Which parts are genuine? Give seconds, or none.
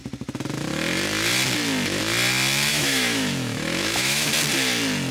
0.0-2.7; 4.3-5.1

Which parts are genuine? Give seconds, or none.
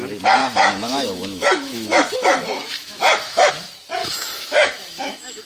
0.0-0.4; 3.5-4.0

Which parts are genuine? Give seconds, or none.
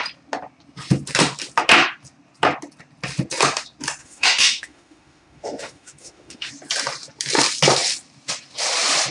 0.0-4.0; 6.5-9.1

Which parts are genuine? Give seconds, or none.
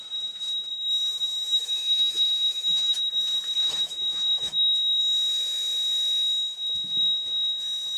0.0-0.7; 3.1-3.6; 5.0-8.0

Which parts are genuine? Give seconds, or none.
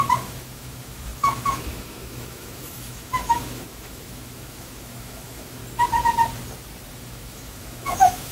5.6-6.9